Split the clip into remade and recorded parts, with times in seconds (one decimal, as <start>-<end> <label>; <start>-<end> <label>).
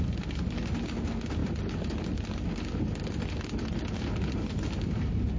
0.0-5.4 recorded